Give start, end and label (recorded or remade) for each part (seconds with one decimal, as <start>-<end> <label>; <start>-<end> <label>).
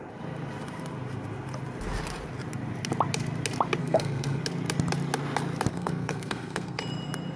0.0-3.8 recorded; 3.8-4.4 remade; 4.4-5.7 recorded; 5.7-6.8 remade; 6.8-7.4 recorded